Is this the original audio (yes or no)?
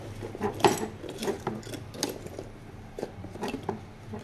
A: yes